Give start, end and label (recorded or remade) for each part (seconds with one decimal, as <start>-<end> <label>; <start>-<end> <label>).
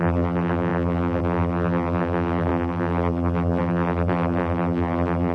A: 0.0-5.3 remade